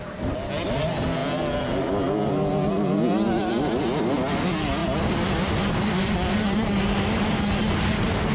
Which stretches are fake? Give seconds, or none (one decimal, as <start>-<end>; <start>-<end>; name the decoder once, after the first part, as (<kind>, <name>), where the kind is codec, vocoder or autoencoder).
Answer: none